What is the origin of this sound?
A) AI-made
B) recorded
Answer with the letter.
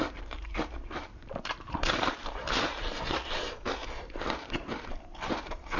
A